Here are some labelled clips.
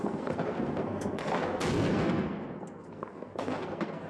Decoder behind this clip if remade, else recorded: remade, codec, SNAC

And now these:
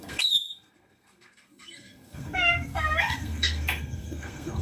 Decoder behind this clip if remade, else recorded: remade, codec, SNAC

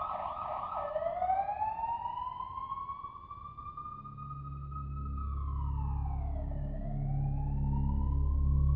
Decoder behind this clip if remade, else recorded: recorded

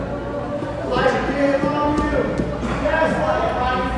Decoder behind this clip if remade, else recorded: recorded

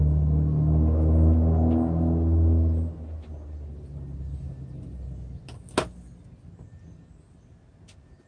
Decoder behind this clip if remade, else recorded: recorded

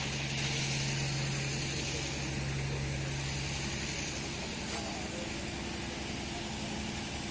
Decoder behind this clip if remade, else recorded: recorded